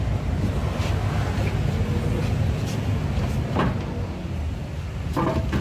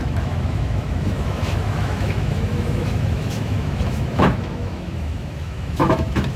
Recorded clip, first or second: first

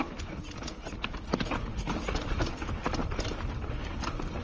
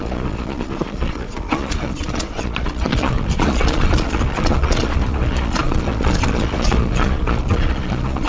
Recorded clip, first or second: first